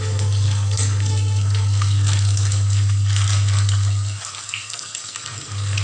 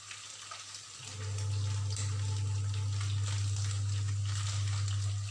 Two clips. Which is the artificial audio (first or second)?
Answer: first